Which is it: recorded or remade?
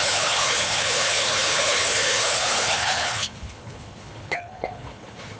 remade